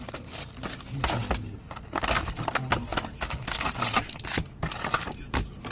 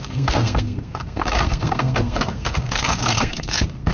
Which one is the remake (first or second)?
second